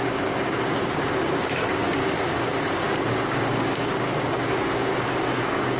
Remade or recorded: remade